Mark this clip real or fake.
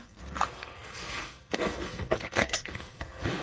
fake